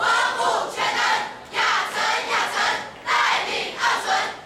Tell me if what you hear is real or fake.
real